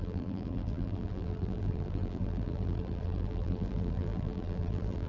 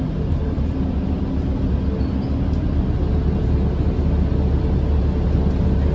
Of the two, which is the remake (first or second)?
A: first